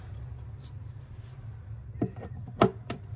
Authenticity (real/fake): real